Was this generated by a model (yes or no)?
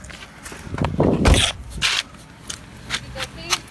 no